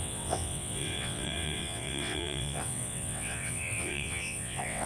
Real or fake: fake